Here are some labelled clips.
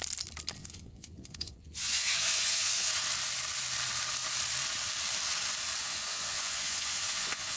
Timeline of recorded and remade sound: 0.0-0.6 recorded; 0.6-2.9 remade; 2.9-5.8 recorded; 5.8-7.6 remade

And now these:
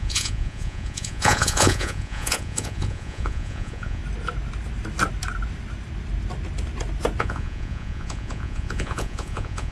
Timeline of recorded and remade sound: 0.0-4.0 remade; 4.0-7.2 recorded; 7.2-9.7 remade

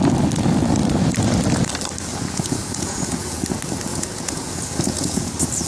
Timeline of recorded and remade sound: 0.0-2.1 recorded; 2.1-3.4 remade; 3.4-3.9 recorded; 3.9-5.3 remade; 5.3-5.7 recorded

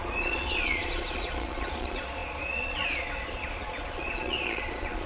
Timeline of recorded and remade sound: 0.0-5.1 remade

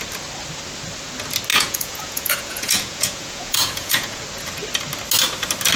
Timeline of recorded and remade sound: 0.0-1.5 recorded; 1.5-4.2 remade; 4.2-5.8 recorded

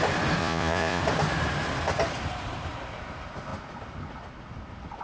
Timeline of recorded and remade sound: 0.0-0.4 recorded; 0.4-1.0 remade; 1.0-5.0 recorded

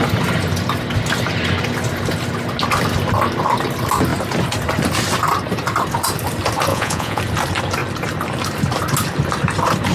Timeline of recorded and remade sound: 0.0-6.7 recorded; 6.7-7.2 remade; 7.2-9.9 recorded